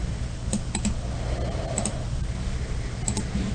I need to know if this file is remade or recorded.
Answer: recorded